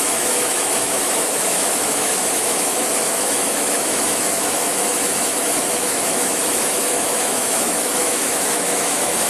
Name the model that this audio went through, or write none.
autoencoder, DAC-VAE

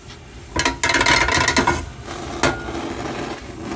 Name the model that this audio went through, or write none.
none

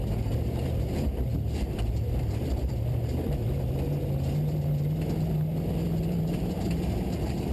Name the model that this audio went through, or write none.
none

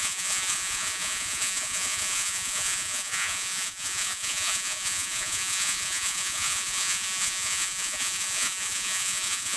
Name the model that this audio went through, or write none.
vocoder, Vocos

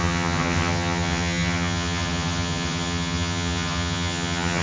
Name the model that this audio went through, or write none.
vocoder, HiFi-GAN